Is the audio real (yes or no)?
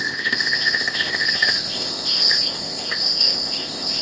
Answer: no